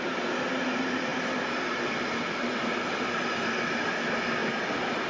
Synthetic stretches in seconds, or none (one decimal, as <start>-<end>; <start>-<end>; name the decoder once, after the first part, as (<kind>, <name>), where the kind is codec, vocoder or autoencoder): none